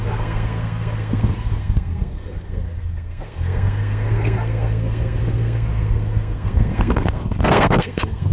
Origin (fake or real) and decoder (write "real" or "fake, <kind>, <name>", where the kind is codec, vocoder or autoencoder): fake, codec, SNAC